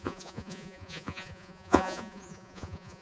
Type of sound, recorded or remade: remade